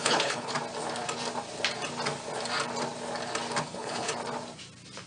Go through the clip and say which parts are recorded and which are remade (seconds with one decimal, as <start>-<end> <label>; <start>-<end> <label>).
0.0-0.5 remade; 0.5-3.6 recorded; 3.6-4.1 remade; 4.1-5.1 recorded